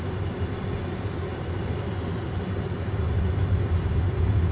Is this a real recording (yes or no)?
yes